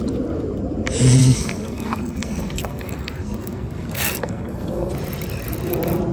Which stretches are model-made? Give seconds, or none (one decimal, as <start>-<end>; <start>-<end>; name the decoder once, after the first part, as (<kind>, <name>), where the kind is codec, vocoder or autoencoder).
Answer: 1.2-4.9 (codec, SNAC)